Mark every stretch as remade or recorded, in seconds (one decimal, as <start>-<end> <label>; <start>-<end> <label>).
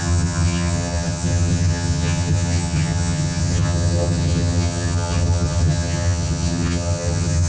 0.0-7.5 remade